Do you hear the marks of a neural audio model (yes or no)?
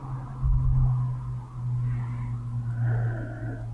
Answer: no